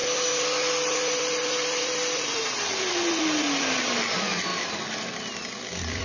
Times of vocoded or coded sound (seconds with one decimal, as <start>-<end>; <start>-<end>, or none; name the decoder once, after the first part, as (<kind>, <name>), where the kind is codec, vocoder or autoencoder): none